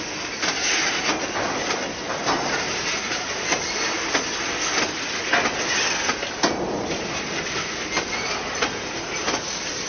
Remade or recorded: recorded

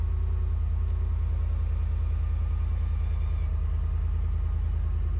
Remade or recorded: recorded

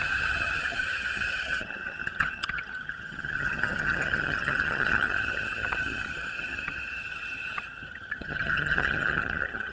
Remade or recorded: remade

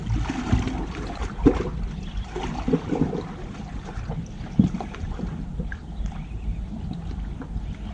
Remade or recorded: recorded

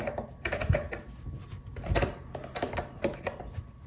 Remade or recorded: recorded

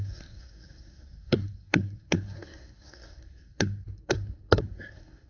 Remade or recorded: remade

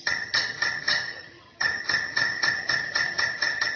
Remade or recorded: remade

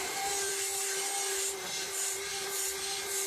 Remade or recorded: remade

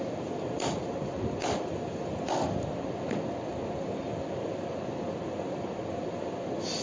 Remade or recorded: recorded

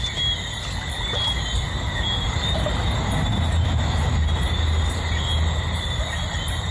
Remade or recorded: recorded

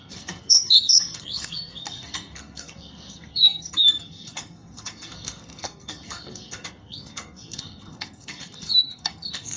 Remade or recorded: remade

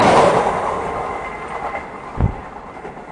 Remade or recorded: recorded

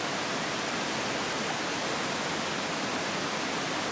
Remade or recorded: recorded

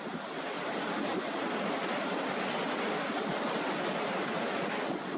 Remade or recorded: recorded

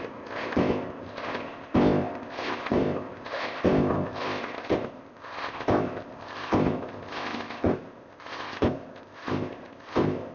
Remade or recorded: remade